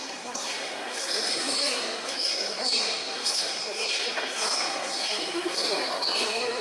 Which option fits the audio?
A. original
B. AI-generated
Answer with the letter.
B